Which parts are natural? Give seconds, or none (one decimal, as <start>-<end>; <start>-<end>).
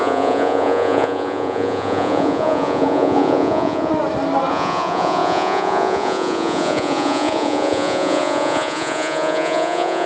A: 3.9-4.5